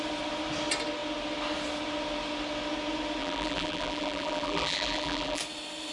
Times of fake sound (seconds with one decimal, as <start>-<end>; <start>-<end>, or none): 3.2-5.4